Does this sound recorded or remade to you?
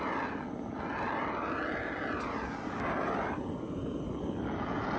recorded